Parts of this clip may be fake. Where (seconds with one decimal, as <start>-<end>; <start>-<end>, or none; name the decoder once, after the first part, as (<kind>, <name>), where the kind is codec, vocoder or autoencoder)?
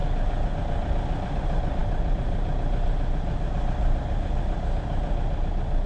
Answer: none